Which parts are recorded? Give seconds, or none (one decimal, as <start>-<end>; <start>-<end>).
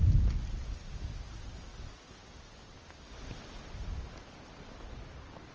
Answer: 0.0-5.5